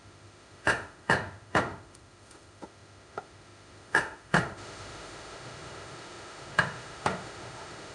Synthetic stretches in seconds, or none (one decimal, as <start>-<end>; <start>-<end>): 0.0-7.9